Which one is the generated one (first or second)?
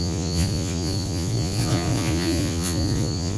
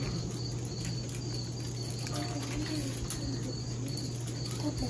first